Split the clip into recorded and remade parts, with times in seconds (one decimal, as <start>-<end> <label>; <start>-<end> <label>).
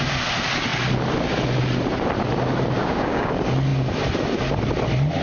0.0-2.8 recorded; 2.8-3.3 remade; 3.3-5.2 recorded